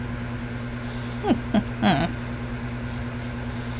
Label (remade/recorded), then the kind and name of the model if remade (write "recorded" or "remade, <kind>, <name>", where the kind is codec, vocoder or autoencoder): recorded